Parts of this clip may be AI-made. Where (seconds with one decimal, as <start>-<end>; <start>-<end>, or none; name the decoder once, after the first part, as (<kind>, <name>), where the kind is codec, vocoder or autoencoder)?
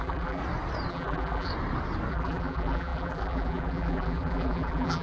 0.0-0.4 (vocoder, BigVGAN v2); 0.9-1.5; 2.1-5.0